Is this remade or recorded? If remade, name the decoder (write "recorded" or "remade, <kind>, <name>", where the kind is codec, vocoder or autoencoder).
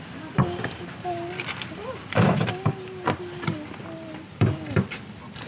remade, vocoder, BigVGAN v2